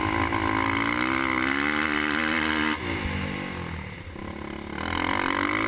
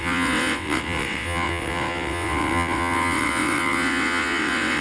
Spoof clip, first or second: second